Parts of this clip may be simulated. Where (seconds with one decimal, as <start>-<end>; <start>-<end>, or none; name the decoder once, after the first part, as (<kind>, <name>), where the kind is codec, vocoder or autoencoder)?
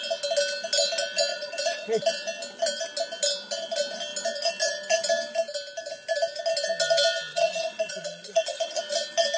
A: 1.3-2.0 (vocoder, Vocos); 7.3-8.8